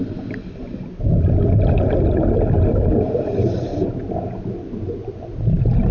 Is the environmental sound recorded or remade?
recorded